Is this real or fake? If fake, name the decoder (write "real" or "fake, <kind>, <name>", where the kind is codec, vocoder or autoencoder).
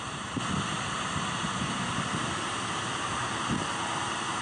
real